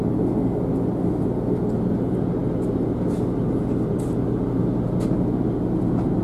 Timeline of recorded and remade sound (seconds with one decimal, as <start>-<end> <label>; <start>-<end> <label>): 0.0-6.2 recorded